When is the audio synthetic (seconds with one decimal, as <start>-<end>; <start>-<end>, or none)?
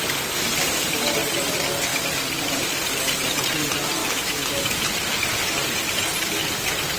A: 4.0-4.9